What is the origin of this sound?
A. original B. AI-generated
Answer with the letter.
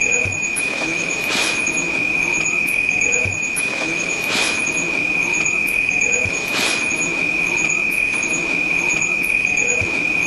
B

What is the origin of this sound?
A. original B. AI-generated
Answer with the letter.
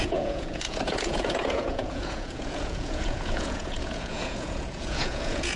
B